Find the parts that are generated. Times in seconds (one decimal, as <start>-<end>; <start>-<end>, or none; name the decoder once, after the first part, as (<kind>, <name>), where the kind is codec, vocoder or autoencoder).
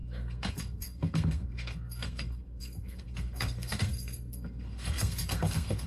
0.0-5.9 (codec, SNAC)